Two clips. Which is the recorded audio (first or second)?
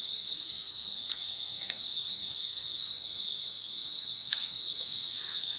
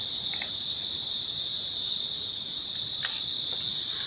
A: second